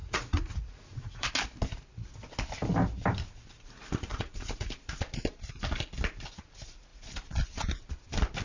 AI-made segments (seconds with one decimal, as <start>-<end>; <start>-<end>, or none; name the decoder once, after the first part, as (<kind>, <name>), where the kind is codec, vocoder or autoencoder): 0.0-1.3 (vocoder, Vocos); 4.1-4.7